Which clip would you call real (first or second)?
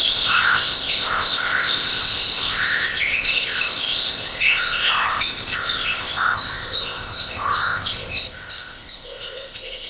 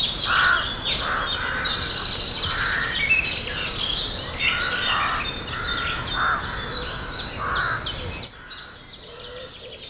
second